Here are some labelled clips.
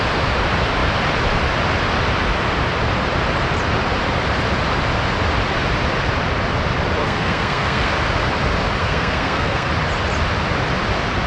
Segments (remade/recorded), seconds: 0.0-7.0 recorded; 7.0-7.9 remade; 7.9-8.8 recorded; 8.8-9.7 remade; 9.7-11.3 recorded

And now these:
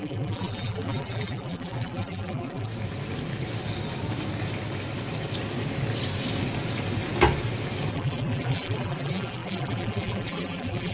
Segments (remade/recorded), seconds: 0.0-2.7 remade; 2.7-7.9 recorded; 7.9-10.9 remade

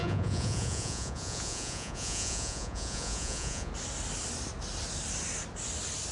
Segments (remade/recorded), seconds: 0.0-3.7 remade; 3.7-6.1 recorded

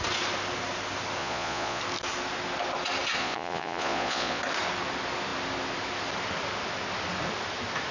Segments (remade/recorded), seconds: 0.0-1.2 recorded; 1.2-1.8 remade; 1.8-3.2 recorded; 3.2-4.4 remade; 4.4-7.9 recorded